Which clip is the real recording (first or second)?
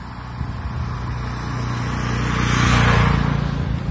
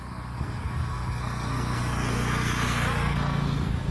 first